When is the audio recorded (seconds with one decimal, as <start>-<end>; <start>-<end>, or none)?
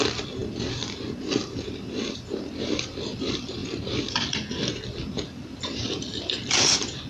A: 0.0-7.1